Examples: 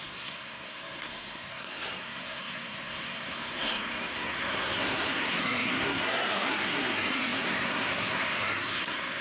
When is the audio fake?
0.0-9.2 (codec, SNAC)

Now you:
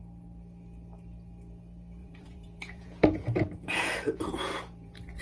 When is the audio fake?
2.0-5.2 (vocoder, Vocos)

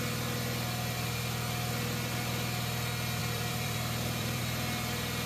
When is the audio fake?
3.2-4.4 (vocoder, BigVGAN v2)

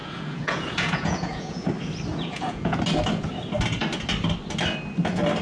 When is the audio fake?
0.0-1.7 (vocoder, Vocos); 2.1-2.8

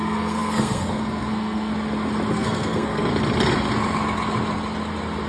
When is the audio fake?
0.0-1.7 (codec, SNAC); 2.3-3.1

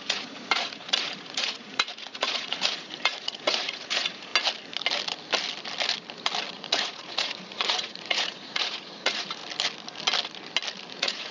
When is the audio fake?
0.0-4.3 (vocoder, Vocos); 6.5-9.4; 10.9-11.3

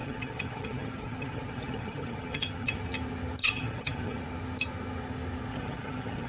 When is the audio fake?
0.0-2.8 (vocoder, HiFi-GAN); 3.4-4.2; 5.5-6.3

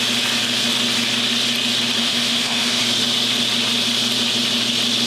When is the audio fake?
2.0-2.8 (autoencoder, DAC-VAE)